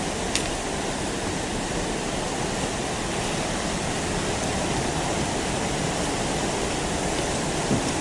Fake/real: fake